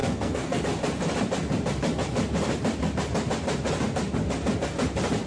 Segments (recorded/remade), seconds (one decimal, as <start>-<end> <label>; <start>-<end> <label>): 0.0-0.6 remade; 0.6-5.3 recorded